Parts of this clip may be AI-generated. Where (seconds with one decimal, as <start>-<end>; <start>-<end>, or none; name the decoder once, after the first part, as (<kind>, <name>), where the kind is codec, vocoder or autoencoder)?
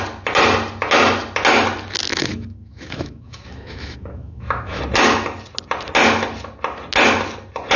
2.1-4.8 (autoencoder, DAC-VAE)